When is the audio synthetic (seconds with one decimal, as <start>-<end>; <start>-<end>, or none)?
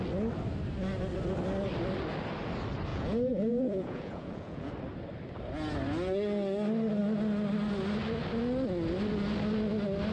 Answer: 2.9-4.7